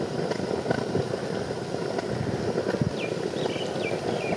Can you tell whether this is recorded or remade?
recorded